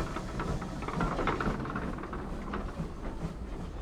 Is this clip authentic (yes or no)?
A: yes